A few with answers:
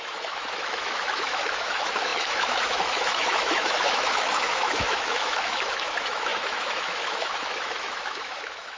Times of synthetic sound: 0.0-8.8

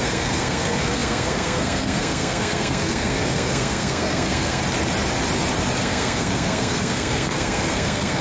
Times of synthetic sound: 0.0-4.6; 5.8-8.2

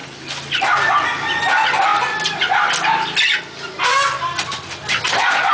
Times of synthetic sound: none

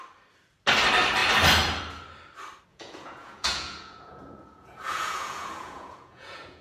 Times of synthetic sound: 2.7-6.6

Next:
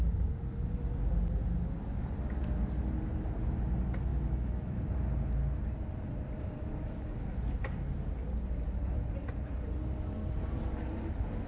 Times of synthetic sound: 4.1-4.8

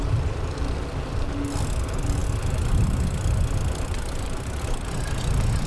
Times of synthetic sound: none